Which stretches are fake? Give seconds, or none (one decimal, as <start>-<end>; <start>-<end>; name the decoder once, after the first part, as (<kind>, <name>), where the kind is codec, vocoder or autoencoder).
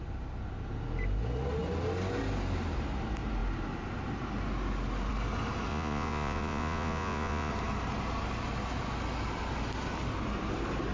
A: 5.7-7.5 (vocoder, Vocos)